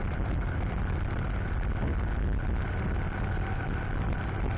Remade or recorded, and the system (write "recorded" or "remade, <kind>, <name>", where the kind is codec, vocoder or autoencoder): recorded